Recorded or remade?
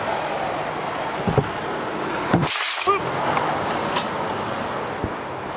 recorded